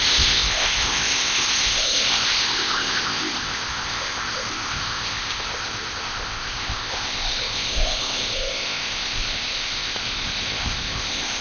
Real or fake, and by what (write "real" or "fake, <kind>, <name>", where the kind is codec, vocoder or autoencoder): fake, codec, ZipCodec